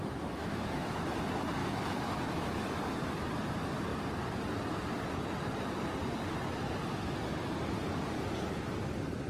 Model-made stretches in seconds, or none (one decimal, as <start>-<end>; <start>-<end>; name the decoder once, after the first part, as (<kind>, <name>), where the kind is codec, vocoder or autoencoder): 0.4-1.0 (autoencoder, DAC-VAE); 1.6-2.8